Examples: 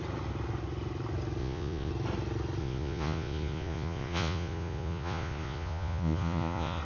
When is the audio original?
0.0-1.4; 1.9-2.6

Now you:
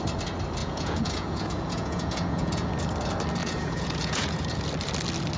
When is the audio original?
0.0-0.6; 2.7-3.4; 4.7-5.4

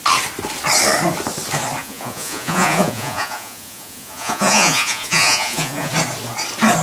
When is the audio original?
0.0-1.8; 5.9-6.8

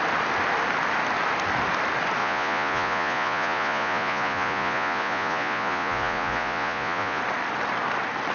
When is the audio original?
0.0-2.2; 7.2-8.3

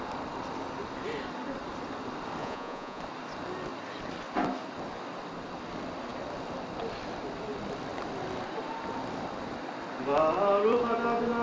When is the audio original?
0.0-2.4; 3.0-11.4

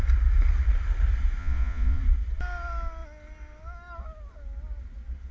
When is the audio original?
0.0-1.4; 2.0-5.3

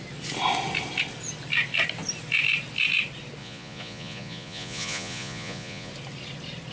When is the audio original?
0.0-3.4; 5.9-6.7